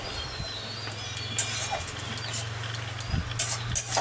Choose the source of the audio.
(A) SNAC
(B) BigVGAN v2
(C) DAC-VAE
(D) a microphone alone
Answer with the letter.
D